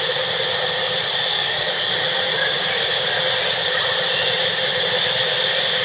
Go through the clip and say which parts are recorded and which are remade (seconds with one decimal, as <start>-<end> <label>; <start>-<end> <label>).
0.0-1.3 recorded; 1.3-1.9 remade; 1.9-5.8 recorded